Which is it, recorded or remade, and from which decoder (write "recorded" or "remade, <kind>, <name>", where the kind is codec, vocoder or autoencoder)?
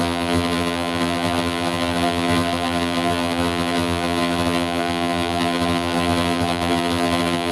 remade, vocoder, BigVGAN v2